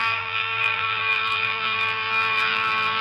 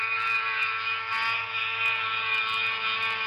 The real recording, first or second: second